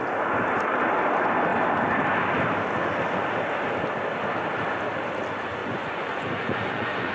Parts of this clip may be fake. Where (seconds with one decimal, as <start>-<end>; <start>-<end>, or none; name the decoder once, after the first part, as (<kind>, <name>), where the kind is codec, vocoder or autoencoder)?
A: 5.6-7.1 (vocoder, Vocos)